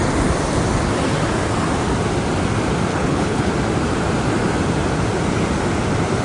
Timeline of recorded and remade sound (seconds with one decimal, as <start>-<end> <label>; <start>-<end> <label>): 0.0-2.9 recorded; 2.9-3.5 remade; 3.5-6.2 recorded